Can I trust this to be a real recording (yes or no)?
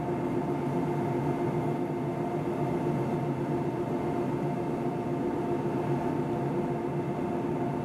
yes